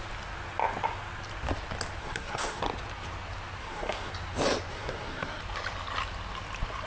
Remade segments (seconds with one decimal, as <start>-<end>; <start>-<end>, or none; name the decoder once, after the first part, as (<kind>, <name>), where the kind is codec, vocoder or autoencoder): 2.0-2.6 (codec, SNAC); 3.6-4.1; 4.7-5.4